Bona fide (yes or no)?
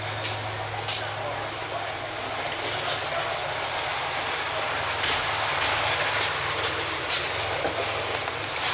yes